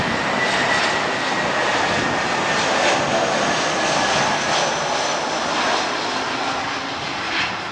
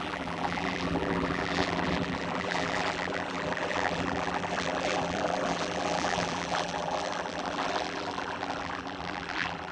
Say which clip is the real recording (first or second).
first